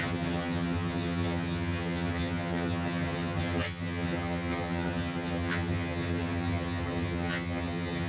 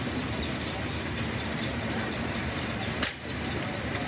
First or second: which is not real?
first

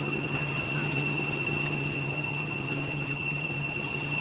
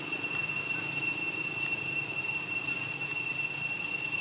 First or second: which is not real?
first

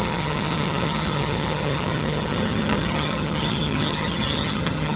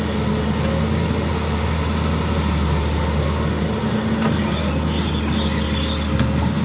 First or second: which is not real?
first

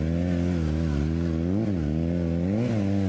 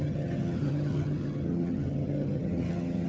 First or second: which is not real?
second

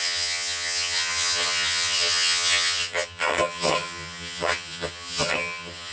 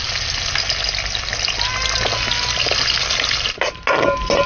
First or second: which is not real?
first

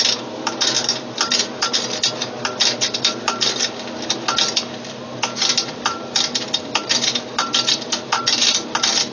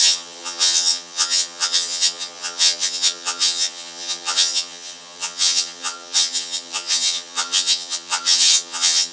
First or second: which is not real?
second